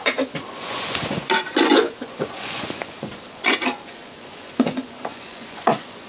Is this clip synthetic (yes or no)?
yes